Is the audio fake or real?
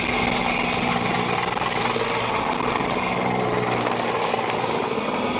real